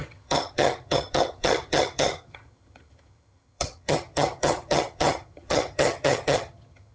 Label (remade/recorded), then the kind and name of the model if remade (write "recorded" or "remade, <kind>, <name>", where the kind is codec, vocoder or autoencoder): remade, vocoder, HiFi-GAN